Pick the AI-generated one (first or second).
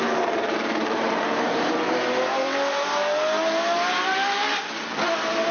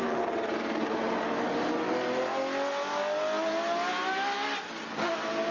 first